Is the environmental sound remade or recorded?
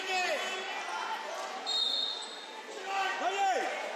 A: recorded